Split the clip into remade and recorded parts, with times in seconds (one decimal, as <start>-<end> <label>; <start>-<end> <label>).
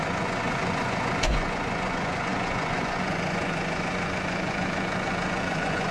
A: 0.0-5.9 remade